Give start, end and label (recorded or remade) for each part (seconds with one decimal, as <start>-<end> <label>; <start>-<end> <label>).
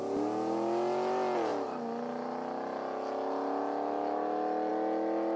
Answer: 0.0-5.4 recorded